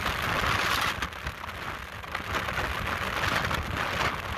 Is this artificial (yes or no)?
no